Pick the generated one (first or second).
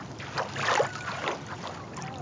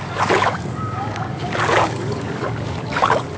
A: second